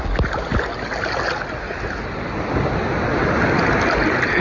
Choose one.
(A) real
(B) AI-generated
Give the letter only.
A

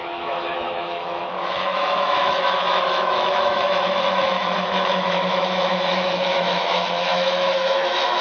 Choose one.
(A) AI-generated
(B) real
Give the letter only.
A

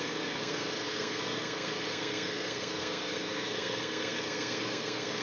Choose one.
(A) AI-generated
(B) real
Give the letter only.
A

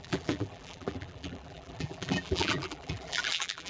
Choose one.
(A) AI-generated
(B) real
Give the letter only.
A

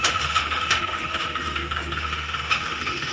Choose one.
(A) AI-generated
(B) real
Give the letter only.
A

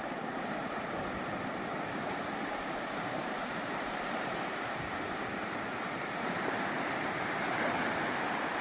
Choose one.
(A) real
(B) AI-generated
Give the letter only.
A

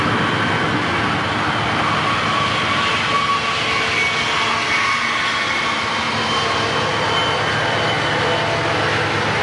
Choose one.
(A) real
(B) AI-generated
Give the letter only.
A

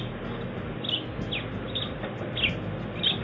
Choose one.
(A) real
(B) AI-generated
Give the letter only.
A